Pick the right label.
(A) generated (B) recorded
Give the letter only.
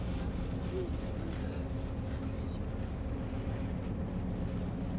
B